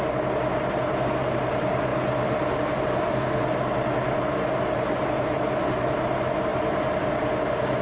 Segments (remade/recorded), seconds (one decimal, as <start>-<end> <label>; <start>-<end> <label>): 0.0-7.8 recorded